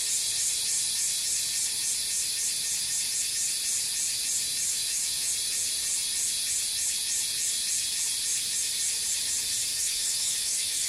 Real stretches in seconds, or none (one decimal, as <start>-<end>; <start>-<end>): 0.0-4.7; 5.3-9.7